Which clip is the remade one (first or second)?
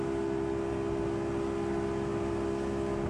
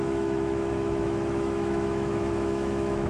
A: second